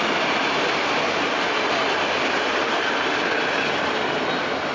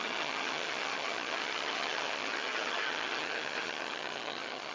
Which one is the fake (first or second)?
second